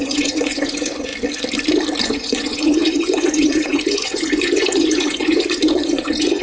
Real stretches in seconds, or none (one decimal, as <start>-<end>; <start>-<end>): 1.1-2.0